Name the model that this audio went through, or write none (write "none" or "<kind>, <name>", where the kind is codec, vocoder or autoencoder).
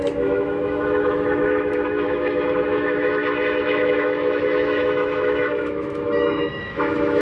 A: autoencoder, DAC-VAE